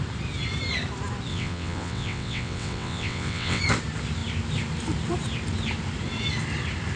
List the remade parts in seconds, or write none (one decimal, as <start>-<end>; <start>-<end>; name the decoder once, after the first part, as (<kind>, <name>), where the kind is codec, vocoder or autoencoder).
1.3-3.6 (vocoder, WaveNeXt)